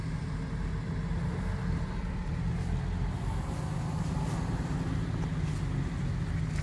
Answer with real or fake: real